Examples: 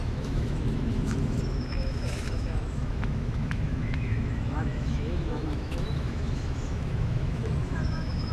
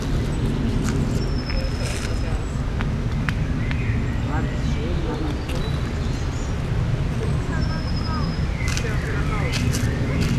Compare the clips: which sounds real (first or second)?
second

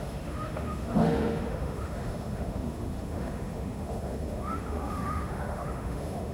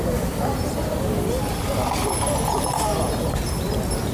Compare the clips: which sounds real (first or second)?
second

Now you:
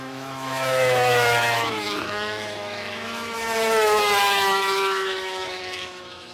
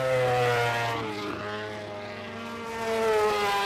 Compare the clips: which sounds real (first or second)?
second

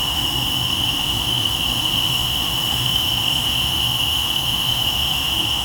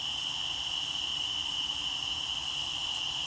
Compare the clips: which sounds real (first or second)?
second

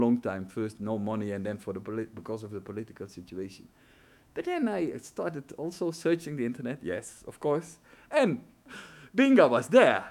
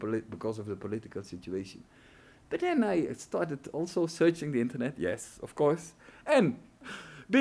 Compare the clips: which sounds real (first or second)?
second